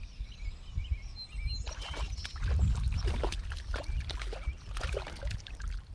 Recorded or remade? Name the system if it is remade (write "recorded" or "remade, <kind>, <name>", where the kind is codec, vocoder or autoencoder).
recorded